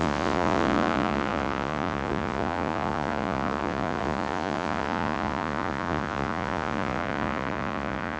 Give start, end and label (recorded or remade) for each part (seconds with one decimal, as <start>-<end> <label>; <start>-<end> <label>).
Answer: 0.0-8.2 remade